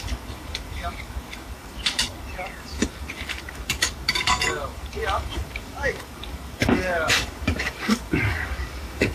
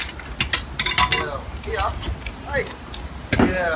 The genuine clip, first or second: second